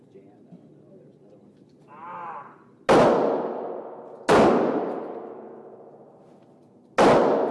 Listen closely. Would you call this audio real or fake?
real